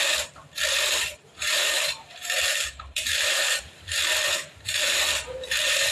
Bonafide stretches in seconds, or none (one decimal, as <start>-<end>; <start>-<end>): 0.0-0.7